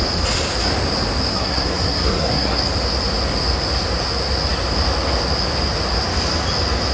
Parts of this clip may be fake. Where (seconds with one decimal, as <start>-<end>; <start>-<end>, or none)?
1.3-2.6